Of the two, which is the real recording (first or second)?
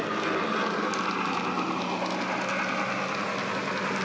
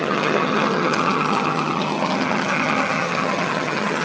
first